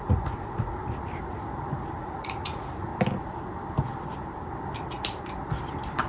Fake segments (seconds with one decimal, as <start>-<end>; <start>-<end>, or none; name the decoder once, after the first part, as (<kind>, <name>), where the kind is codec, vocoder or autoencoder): 0.0-0.8 (vocoder, Vocos); 2.0-2.9